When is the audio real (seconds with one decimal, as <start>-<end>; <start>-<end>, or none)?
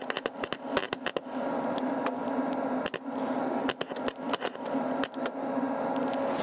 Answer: 0.0-6.4